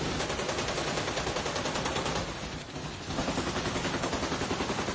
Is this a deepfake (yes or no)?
no